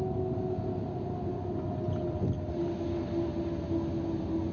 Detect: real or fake real